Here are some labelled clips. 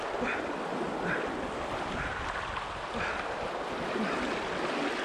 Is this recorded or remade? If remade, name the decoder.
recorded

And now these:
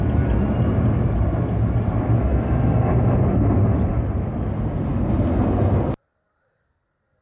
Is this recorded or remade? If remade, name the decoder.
recorded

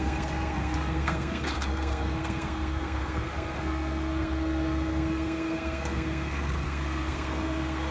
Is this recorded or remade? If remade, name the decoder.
remade, codec, SNAC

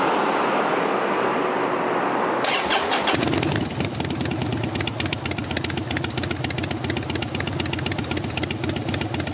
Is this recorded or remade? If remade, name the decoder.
recorded